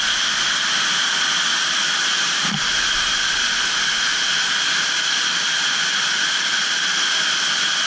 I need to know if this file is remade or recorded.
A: recorded